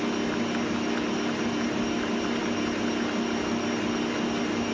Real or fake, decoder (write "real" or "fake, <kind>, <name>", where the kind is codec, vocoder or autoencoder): real